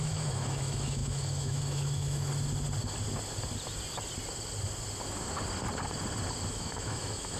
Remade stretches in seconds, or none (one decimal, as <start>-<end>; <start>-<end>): 0.0-2.3; 6.5-7.4